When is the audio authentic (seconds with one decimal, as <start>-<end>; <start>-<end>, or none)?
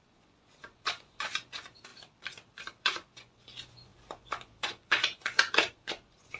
1.9-2.8